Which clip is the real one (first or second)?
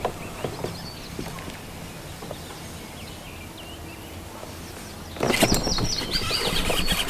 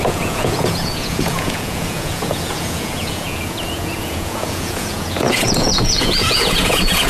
first